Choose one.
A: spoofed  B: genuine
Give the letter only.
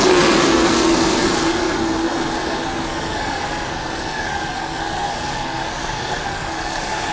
A